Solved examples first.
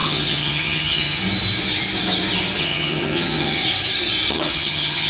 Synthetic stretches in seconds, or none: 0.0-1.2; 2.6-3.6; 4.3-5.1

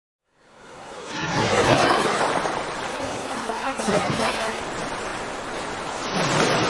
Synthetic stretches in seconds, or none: 0.0-2.2; 2.9-4.6

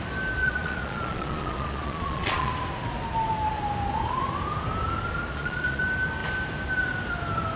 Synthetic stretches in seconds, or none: 0.4-2.5; 5.3-5.8

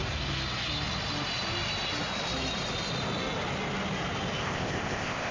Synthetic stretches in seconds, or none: 4.4-5.3

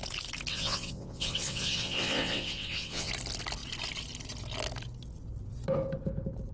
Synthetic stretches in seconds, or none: 0.5-3.1